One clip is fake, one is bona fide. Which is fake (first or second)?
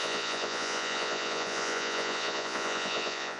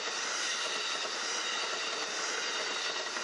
first